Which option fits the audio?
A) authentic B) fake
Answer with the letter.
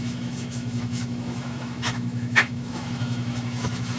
B